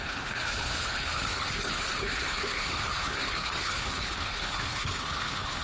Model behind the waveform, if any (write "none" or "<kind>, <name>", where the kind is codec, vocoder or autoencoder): codec, HILCodec